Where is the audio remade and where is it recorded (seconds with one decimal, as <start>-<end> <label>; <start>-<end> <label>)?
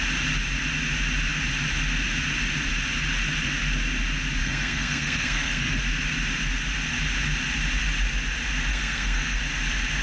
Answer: 0.0-4.4 recorded; 4.4-5.8 remade; 5.8-8.7 recorded; 8.7-9.4 remade; 9.4-10.0 recorded